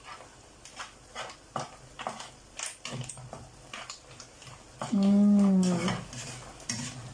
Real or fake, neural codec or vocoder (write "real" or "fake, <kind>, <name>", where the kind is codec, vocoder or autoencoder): real